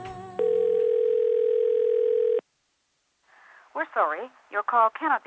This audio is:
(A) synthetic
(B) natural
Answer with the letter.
B